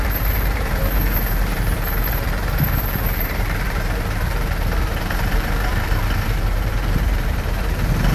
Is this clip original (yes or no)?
no